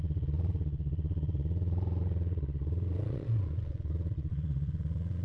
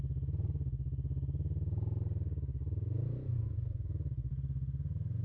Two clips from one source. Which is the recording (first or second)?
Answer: second